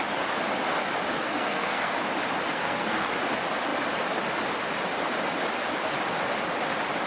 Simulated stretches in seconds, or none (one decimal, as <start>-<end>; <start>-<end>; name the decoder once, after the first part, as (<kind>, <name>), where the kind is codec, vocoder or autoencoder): 1.1-2.0 (codec, SNAC); 2.5-3.1